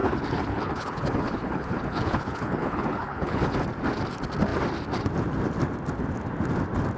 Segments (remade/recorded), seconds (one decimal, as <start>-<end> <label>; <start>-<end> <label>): 0.0-3.5 remade; 3.5-7.0 recorded